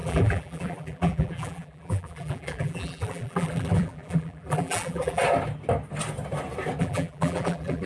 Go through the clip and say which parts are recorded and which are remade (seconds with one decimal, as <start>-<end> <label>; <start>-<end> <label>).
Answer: 0.0-5.2 remade; 5.2-6.8 recorded; 6.8-7.9 remade